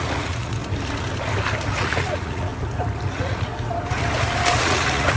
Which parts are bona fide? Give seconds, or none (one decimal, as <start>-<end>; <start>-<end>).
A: 0.6-1.7; 2.5-3.1; 3.5-4.6